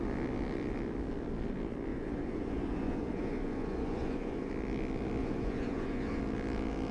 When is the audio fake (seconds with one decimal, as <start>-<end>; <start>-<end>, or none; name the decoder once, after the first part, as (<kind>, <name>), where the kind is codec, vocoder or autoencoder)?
1.9-4.5 (vocoder, Vocos); 5.2-6.2